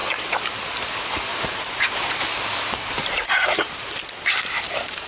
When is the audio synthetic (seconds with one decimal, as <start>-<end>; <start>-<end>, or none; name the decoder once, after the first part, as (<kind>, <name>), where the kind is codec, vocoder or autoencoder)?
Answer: 1.3-4.0 (vocoder, BigVGAN v2)